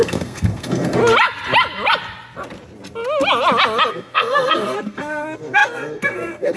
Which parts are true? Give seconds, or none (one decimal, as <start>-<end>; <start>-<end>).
1.0-3.9